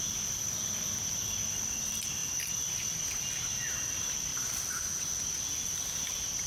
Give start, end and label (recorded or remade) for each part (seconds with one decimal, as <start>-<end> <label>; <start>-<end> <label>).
0.0-2.2 recorded; 2.2-3.2 remade; 3.2-4.3 recorded; 4.3-5.4 remade; 5.4-6.5 recorded